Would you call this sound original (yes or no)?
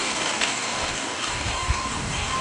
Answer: no